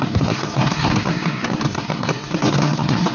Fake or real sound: fake